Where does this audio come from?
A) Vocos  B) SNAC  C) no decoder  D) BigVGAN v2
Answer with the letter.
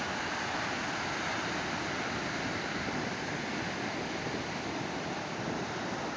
C